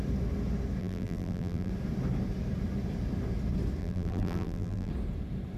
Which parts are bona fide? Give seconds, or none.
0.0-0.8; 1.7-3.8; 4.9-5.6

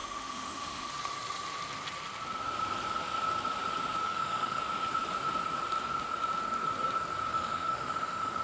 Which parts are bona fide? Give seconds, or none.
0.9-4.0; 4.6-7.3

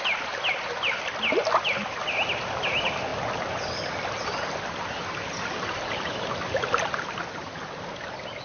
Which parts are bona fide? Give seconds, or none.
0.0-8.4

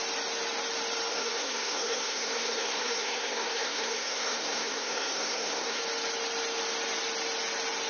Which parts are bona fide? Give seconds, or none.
0.0-1.1; 5.8-7.9

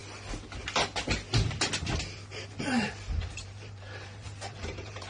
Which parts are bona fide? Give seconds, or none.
0.0-2.6

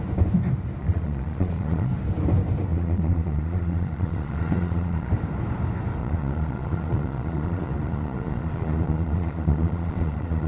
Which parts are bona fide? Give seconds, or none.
0.0-0.8; 1.9-2.7; 5.1-6.0